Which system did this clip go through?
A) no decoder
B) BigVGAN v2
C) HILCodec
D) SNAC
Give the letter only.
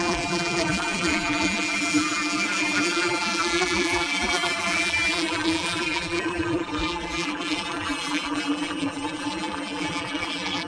B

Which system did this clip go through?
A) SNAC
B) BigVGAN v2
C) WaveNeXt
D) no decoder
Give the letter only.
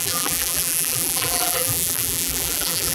B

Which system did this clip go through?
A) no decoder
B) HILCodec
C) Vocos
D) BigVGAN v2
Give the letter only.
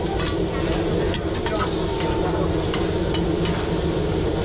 A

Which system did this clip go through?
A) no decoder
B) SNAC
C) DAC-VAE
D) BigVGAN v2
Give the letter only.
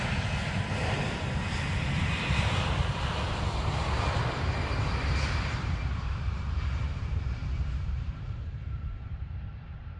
D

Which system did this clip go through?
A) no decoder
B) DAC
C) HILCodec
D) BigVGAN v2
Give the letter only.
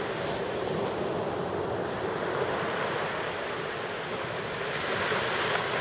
A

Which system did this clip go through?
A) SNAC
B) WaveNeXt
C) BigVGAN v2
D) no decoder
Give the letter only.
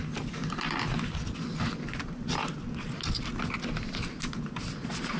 D